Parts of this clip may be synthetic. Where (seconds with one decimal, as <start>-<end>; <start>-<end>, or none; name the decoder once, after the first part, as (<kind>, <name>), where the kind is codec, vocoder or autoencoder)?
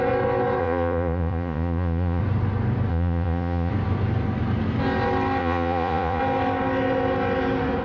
0.6-2.2 (vocoder, Vocos); 2.9-3.7; 5.4-6.2